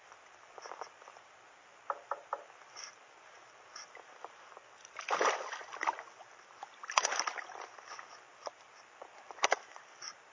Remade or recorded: recorded